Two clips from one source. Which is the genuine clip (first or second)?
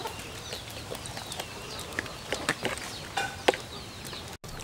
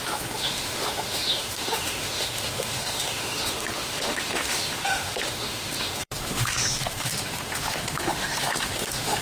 first